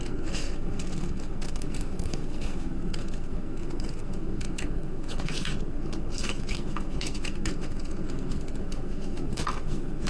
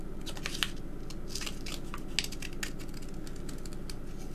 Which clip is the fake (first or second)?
first